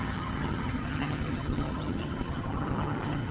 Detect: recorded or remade remade